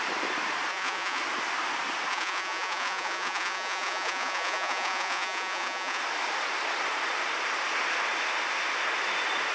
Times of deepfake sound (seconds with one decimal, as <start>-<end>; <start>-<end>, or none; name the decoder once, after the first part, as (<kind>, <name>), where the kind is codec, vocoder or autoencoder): 0.7-1.2 (vocoder, Vocos); 2.1-6.0